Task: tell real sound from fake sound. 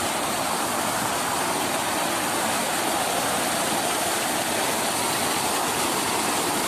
real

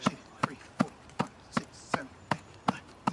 fake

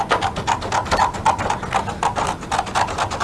real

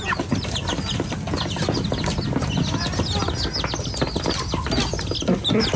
real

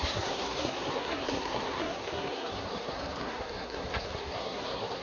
fake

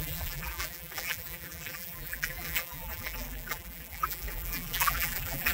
fake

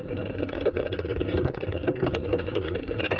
fake